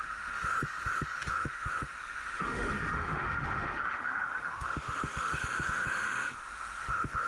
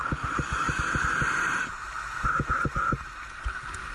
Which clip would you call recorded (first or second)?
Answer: second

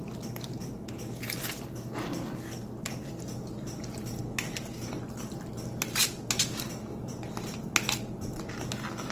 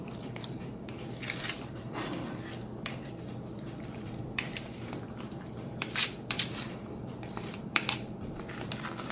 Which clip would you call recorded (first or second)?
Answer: first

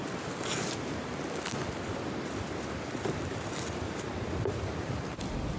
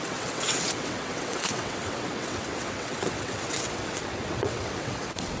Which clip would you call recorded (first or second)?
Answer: first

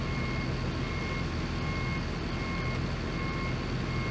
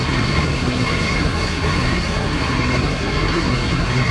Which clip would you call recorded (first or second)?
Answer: first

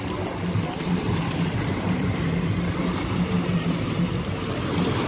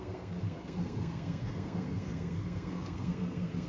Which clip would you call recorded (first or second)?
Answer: first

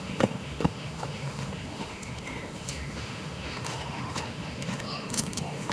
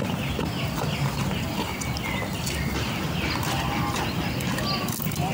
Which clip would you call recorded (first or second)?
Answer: second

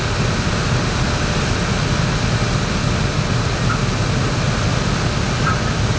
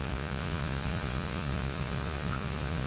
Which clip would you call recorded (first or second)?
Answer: first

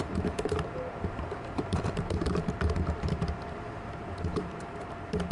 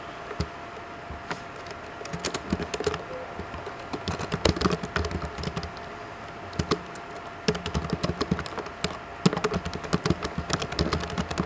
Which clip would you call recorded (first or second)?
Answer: second